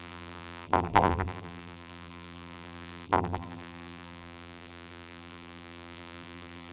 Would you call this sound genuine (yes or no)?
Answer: no